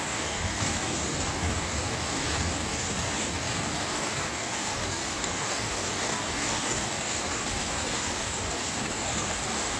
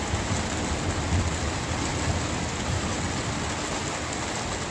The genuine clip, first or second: second